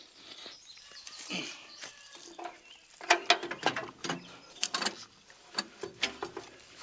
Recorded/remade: recorded